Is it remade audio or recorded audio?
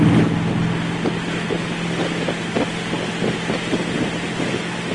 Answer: recorded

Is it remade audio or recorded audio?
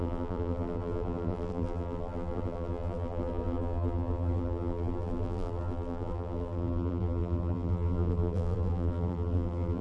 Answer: remade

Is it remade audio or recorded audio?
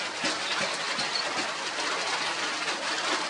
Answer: recorded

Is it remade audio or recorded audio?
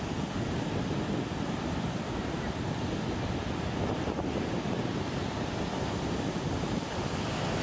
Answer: recorded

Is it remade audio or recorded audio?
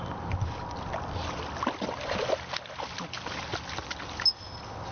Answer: recorded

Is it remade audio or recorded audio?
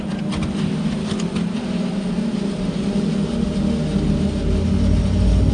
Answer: recorded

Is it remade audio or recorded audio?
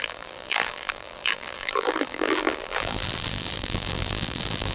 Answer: remade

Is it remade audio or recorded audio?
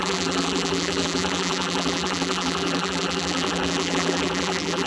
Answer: remade